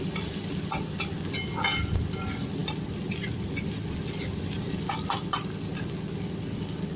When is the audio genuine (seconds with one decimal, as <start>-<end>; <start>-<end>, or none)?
0.0-7.0